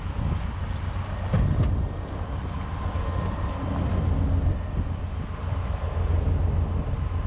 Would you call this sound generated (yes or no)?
no